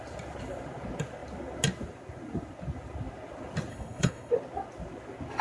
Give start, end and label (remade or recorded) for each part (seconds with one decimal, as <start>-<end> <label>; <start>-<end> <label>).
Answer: 0.0-3.7 recorded; 3.7-4.3 remade; 4.3-5.4 recorded